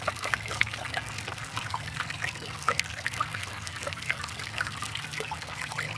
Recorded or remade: remade